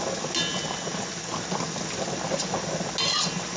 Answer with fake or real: real